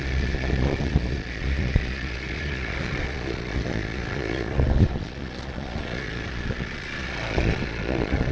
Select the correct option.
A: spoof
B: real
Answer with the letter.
A